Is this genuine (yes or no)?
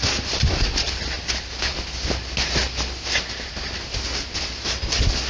yes